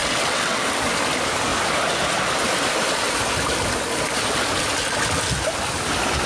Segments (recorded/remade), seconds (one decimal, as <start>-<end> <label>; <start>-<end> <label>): 0.0-0.6 remade; 0.6-6.3 recorded